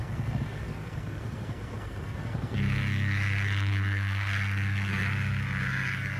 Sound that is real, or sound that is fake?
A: fake